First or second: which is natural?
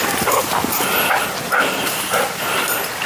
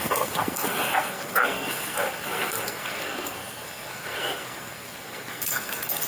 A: first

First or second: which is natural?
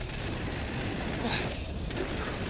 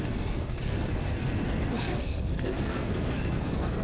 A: first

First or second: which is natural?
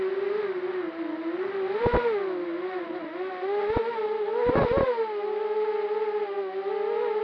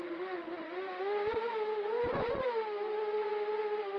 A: first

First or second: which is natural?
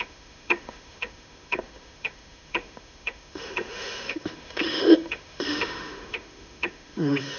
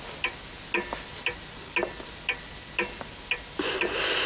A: second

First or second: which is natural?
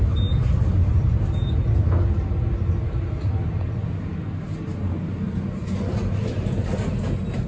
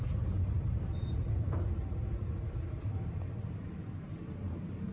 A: first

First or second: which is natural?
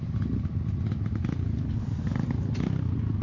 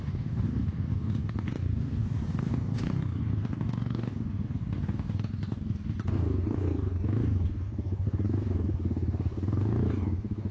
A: first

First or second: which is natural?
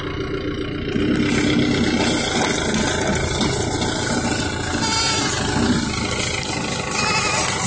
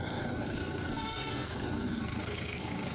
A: first